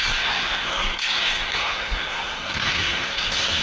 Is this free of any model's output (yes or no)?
no